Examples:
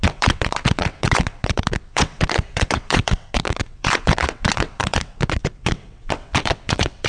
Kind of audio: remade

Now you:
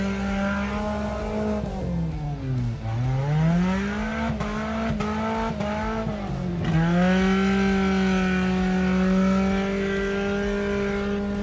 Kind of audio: recorded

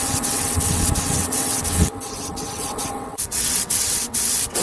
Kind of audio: remade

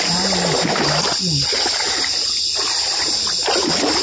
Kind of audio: recorded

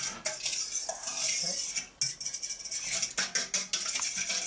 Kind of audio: recorded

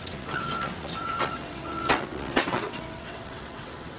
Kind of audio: remade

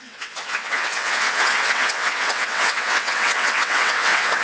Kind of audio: remade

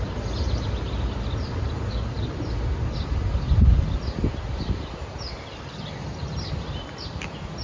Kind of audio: recorded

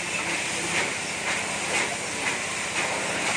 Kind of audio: recorded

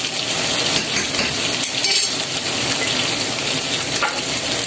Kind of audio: recorded